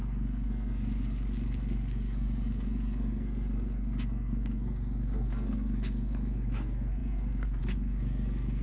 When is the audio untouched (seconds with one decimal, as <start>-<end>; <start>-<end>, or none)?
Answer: none